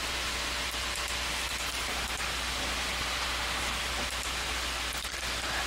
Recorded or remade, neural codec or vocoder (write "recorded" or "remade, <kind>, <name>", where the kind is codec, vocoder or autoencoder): remade, vocoder, BigVGAN v2